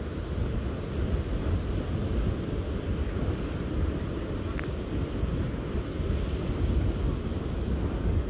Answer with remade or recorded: recorded